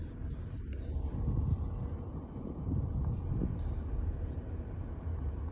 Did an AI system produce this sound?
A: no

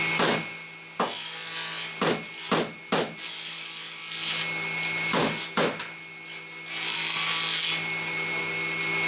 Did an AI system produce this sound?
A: no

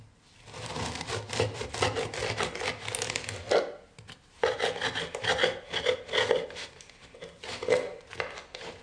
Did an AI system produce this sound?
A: no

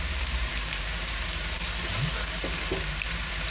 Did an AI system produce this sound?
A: yes